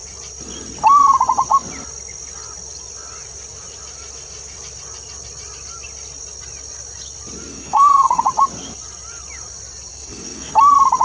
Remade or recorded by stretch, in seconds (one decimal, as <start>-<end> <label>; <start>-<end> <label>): 0.0-7.5 recorded; 7.5-8.2 remade; 8.2-9.9 recorded; 9.9-10.5 remade; 10.5-11.0 recorded

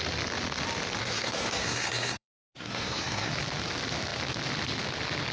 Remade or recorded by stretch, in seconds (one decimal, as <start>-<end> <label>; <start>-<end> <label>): 0.0-1.0 recorded; 1.0-3.3 remade; 3.3-5.3 recorded